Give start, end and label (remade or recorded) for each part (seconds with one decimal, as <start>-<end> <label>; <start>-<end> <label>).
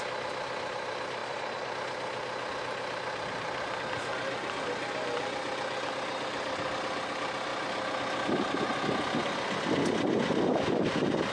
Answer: 0.0-1.2 recorded; 1.2-1.7 remade; 1.7-11.3 recorded